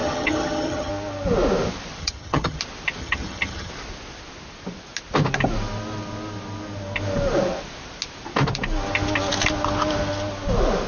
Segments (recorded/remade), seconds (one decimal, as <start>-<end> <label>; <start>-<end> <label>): 0.0-0.9 remade; 0.9-2.0 recorded; 2.0-2.6 remade; 2.6-3.0 recorded; 3.0-3.7 remade; 3.7-10.9 recorded